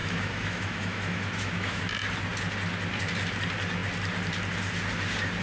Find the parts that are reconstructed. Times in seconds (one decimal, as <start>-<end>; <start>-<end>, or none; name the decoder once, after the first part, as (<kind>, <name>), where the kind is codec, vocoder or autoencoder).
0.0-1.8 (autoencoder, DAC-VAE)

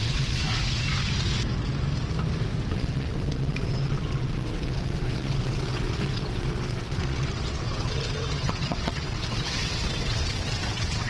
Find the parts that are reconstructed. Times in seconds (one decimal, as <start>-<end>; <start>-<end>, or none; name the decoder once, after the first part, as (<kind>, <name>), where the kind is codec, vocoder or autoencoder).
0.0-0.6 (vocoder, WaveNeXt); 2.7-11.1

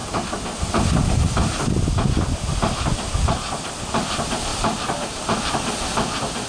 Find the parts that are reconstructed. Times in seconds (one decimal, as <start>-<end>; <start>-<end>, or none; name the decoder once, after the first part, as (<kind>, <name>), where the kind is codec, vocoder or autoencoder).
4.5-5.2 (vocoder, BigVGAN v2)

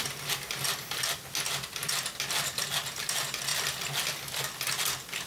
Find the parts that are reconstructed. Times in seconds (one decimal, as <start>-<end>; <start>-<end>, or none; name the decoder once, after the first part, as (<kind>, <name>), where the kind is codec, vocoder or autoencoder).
none